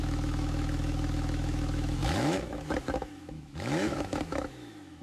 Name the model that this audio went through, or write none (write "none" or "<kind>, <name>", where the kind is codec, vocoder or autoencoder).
autoencoder, DAC-VAE